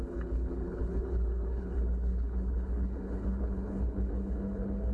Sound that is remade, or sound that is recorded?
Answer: remade